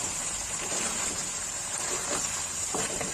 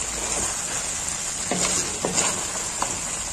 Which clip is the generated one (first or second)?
first